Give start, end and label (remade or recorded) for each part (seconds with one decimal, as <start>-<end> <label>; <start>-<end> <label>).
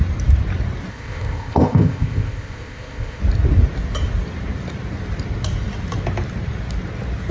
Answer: 0.0-0.9 recorded; 0.9-3.2 remade; 3.2-7.3 recorded